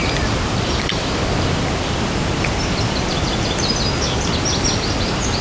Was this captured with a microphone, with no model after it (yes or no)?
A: yes